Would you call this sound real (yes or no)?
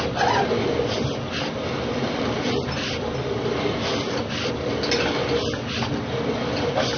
yes